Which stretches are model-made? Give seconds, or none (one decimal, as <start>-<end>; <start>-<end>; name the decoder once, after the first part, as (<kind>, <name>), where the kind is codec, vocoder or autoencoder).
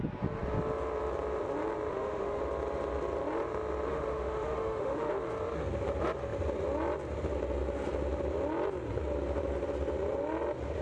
1.9-2.4 (autoencoder, DAC-VAE); 3.9-5.1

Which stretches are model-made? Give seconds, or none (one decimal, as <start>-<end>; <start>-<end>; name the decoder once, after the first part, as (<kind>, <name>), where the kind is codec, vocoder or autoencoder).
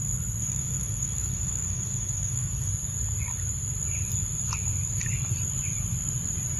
0.4-2.7 (autoencoder, DAC-VAE)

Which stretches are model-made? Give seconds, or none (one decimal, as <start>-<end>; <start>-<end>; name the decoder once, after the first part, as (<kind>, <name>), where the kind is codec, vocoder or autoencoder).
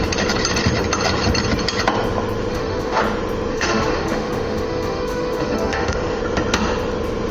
2.5-3.0 (autoencoder, DAC-VAE); 3.5-6.2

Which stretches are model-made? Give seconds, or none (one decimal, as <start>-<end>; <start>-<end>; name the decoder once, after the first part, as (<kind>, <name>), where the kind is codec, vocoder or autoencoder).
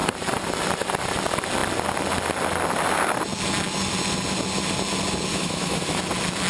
5.3-6.0 (autoencoder, DAC-VAE)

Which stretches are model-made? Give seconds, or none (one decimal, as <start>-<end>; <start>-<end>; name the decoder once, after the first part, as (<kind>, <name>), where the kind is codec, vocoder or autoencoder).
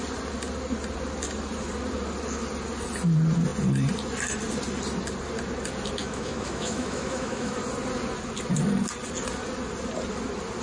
6.0-7.5 (autoencoder, DAC-VAE)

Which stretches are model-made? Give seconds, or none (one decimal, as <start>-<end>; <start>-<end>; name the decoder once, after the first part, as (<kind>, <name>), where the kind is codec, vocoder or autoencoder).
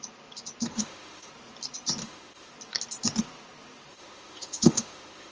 0.7-1.3 (autoencoder, DAC-VAE); 2.0-2.5; 3.9-5.3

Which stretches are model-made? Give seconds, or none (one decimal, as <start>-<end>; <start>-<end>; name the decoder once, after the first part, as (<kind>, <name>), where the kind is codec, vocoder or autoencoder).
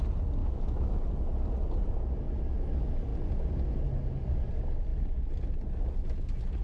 0.4-1.1 (autoencoder, DAC-VAE)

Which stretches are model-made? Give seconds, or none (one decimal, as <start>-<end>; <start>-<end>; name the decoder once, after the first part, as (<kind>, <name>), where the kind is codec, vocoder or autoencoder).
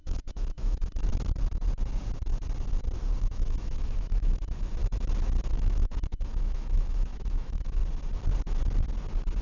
0.0-1.1 (autoencoder, DAC-VAE); 3.2-4.8; 5.5-7.8